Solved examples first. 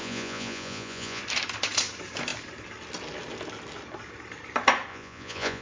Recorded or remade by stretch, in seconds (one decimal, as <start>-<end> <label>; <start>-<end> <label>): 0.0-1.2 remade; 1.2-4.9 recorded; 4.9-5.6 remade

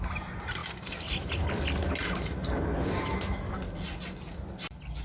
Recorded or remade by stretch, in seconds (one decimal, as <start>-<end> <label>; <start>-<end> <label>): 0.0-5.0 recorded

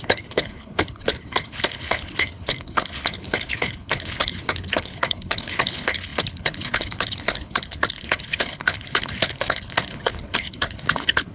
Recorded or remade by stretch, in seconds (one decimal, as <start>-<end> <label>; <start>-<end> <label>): 0.0-11.3 remade